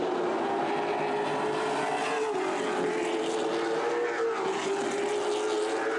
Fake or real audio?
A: real